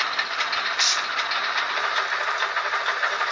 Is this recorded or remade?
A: recorded